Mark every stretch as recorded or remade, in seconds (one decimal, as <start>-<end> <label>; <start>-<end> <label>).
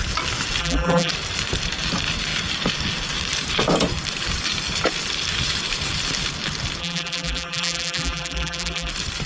0.0-0.6 recorded; 0.6-1.1 remade; 1.1-6.8 recorded; 6.8-8.9 remade; 8.9-9.3 recorded